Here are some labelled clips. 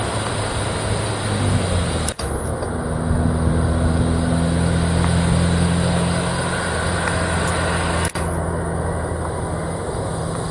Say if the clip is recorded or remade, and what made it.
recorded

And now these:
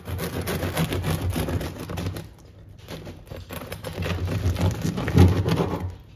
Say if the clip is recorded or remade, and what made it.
recorded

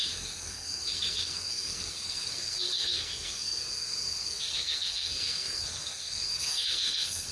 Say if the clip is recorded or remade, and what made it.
remade, codec, SNAC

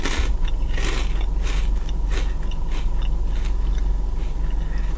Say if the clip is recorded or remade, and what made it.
recorded